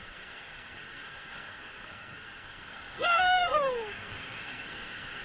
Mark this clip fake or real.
fake